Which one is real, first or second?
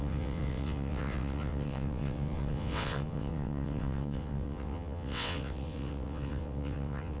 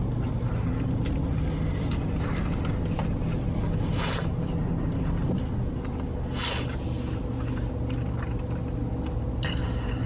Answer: second